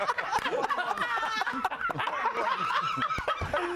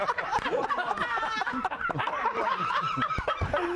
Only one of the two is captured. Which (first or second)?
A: first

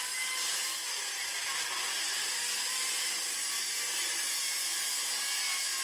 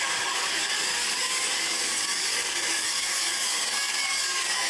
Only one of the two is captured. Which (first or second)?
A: first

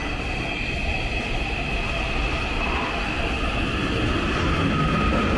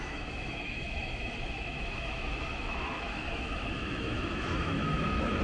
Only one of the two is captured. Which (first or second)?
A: first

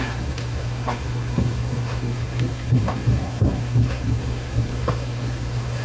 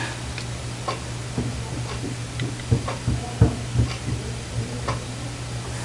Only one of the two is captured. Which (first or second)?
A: second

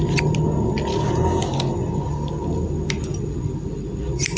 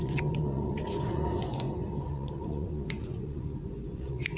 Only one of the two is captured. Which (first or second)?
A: first